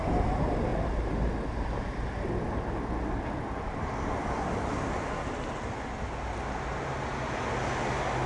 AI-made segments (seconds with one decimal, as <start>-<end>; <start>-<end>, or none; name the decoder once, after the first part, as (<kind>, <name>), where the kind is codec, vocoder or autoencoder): none